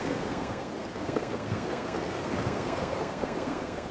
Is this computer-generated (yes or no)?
yes